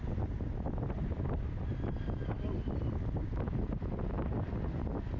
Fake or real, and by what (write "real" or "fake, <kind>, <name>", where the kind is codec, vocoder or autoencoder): real